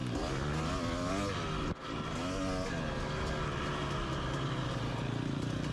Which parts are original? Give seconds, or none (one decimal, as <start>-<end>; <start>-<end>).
0.0-5.7